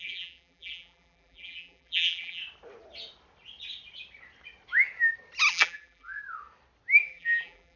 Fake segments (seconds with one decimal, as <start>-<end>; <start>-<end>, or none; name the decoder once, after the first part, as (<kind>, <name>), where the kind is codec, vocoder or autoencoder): 0.0-2.4 (vocoder, BigVGAN v2); 5.5-6.2; 7.0-7.8